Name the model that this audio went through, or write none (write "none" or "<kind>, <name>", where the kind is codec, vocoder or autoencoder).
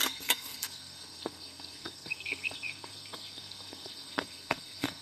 codec, SNAC